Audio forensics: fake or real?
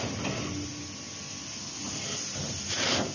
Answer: real